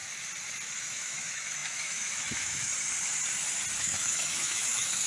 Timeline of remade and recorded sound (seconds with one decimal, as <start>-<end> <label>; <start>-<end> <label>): 0.0-0.8 recorded; 0.8-2.7 remade; 2.7-3.8 recorded; 3.8-5.1 remade